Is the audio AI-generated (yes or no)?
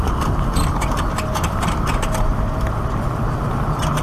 yes